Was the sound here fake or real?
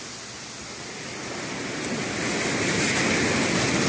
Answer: real